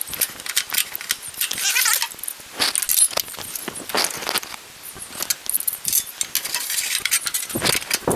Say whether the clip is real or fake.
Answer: real